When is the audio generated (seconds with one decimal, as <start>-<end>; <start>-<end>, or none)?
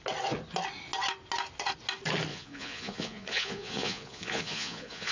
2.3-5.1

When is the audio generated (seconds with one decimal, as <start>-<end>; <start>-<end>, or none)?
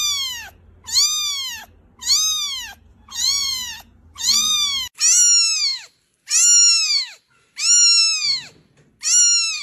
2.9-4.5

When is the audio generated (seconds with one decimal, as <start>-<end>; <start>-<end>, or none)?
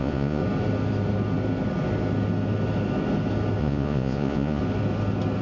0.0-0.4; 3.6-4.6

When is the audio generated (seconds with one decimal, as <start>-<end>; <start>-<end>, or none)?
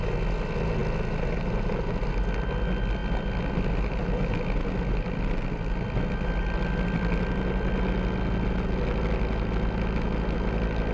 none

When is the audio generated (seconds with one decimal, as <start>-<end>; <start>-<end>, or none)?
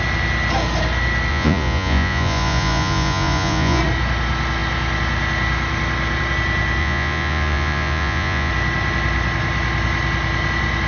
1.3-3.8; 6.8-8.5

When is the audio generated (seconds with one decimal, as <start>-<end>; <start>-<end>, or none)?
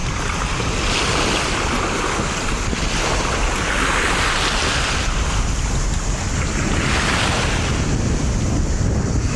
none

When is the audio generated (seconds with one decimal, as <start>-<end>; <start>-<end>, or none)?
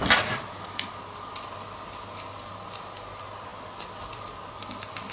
none